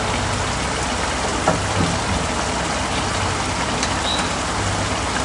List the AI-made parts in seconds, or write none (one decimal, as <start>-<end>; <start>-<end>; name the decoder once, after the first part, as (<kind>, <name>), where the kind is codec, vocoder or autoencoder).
none